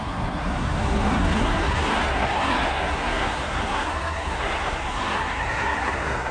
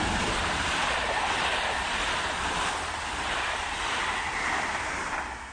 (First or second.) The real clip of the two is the second